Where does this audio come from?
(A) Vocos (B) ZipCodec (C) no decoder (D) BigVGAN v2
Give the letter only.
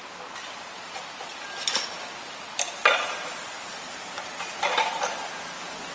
C